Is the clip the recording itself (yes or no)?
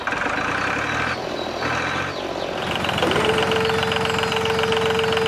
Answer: yes